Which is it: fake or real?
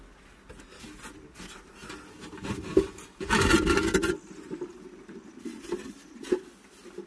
real